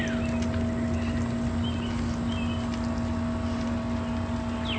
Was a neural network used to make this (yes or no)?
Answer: no